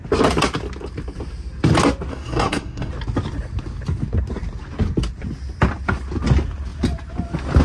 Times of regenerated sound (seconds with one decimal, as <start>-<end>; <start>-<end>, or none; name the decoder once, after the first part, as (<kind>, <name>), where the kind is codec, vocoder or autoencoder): 2.1-2.9 (codec, SNAC)